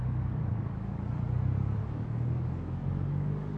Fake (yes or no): yes